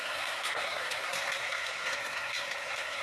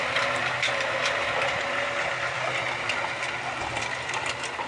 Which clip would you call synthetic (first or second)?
first